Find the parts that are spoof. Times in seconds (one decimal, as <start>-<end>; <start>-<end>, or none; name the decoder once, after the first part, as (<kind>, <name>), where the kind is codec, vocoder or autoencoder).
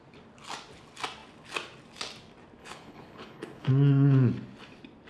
2.6-3.7 (codec, HILCodec)